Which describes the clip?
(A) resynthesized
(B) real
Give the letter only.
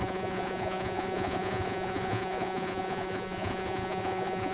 A